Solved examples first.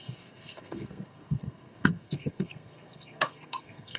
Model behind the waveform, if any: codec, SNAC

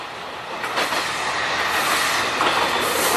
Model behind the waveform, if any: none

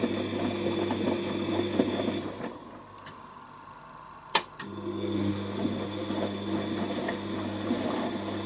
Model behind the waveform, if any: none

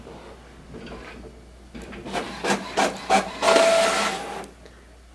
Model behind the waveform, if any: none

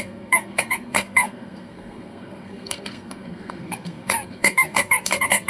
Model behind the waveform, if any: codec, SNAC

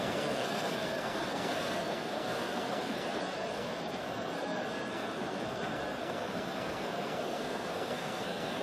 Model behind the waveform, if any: codec, SNAC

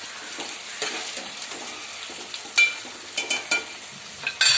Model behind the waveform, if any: none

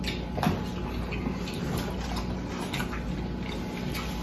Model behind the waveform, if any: none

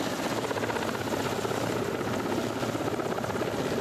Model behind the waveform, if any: none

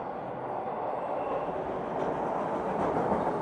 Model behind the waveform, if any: none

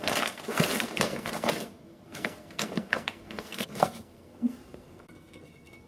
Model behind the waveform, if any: codec, SNAC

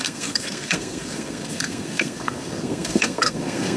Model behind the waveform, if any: codec, SNAC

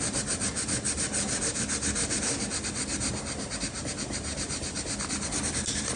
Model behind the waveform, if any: none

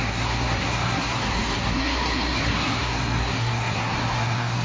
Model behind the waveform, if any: codec, SNAC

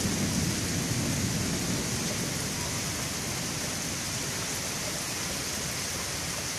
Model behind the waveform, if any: none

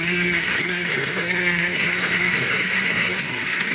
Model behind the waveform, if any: codec, SNAC